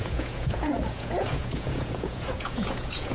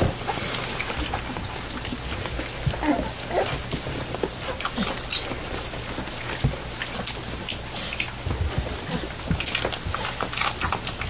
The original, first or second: second